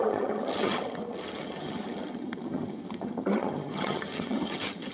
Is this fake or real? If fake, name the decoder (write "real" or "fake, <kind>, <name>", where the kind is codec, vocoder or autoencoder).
fake, vocoder, HiFi-GAN